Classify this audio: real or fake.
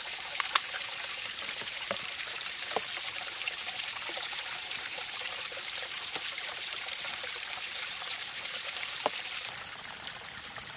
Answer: fake